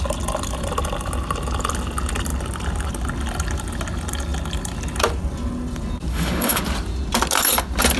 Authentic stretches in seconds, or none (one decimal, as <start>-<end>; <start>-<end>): 0.0-6.1; 6.6-8.0